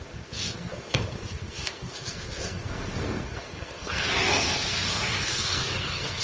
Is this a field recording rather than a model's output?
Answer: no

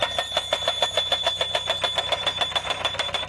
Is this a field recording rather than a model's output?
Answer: yes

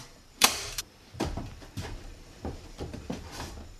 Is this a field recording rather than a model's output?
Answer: no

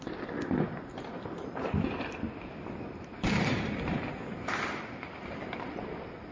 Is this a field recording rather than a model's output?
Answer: yes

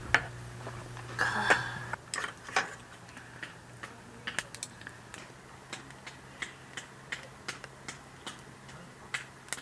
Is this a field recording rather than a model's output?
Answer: yes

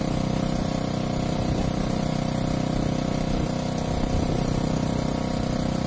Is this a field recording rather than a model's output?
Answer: yes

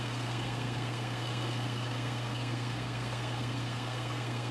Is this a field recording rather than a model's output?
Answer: no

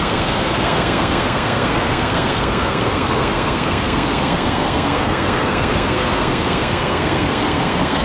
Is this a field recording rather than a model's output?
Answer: no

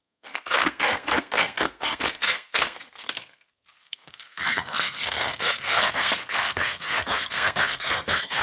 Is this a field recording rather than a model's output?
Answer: no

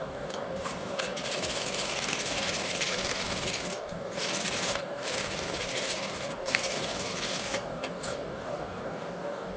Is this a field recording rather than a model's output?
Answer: no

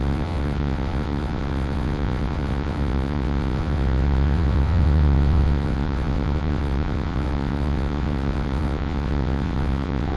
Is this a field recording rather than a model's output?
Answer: no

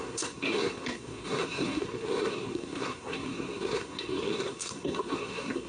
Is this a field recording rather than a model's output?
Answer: no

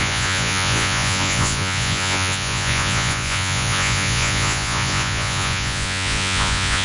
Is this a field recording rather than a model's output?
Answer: no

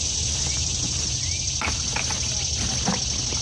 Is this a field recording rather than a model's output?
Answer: yes